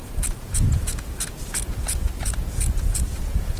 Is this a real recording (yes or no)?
no